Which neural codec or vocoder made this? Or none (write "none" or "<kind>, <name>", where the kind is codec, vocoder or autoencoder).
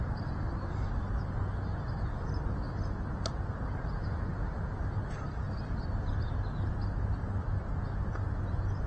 none